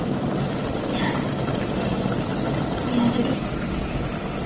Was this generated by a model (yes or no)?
yes